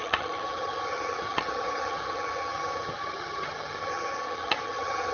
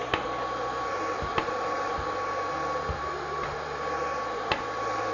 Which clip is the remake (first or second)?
first